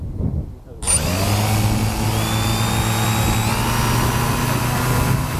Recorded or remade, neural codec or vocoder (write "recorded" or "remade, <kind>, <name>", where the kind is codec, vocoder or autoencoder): recorded